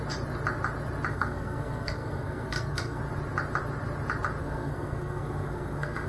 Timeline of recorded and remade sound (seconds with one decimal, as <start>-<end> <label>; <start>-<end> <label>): 0.0-1.1 recorded; 1.1-3.0 remade; 3.0-4.4 recorded; 4.4-6.1 remade